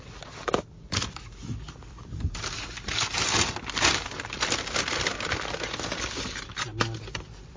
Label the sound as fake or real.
real